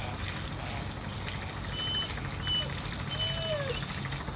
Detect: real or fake real